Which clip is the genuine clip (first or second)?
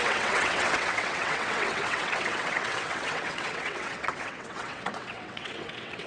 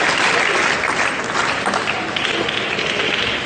second